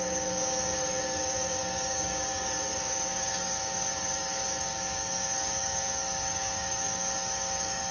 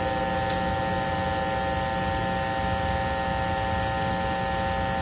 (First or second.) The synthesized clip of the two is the first